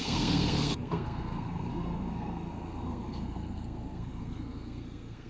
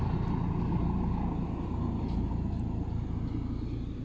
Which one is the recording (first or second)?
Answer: second